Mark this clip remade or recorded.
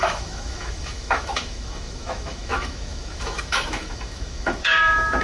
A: remade